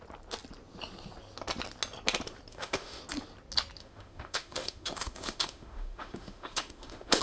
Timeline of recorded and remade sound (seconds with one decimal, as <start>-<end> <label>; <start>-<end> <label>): 0.0-2.5 recorded; 2.5-3.0 remade; 3.0-3.8 recorded; 3.8-7.2 remade